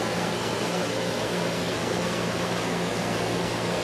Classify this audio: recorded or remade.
remade